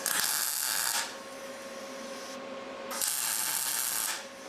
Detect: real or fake real